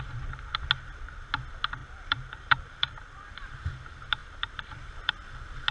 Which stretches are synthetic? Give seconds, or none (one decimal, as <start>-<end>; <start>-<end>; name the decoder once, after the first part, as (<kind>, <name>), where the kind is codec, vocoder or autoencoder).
1.8-3.3 (vocoder, BigVGAN v2); 4.2-5.1